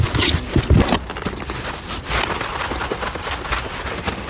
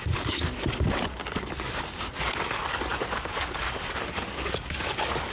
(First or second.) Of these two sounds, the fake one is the second